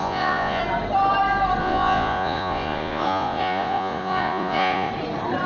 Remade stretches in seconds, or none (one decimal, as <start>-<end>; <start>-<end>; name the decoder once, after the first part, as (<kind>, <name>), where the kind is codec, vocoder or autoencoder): 0.0-0.6 (vocoder, Vocos); 1.6-4.9